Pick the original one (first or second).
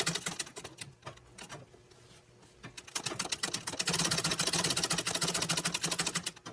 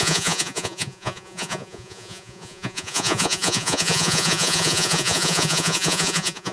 first